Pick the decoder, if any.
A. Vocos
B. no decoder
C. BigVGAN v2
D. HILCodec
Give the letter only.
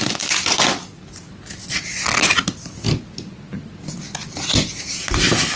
B